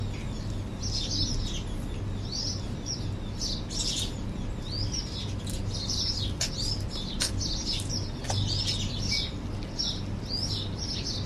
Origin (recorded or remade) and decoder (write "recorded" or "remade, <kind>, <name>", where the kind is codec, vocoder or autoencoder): recorded